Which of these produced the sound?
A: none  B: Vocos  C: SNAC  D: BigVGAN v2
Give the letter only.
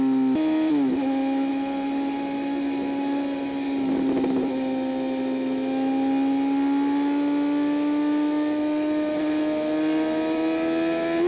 A